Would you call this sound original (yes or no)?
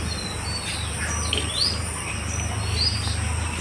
yes